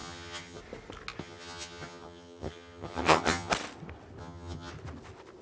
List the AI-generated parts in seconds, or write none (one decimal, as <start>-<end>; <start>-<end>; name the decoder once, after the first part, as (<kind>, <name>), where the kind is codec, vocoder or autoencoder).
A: 0.0-0.6 (vocoder, HiFi-GAN); 1.2-3.5; 4.2-4.7